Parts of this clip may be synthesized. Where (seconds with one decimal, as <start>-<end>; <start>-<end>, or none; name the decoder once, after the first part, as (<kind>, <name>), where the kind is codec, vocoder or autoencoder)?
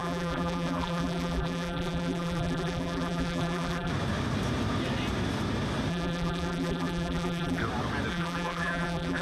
0.0-3.9 (vocoder, BigVGAN v2); 5.9-7.6; 8.1-9.2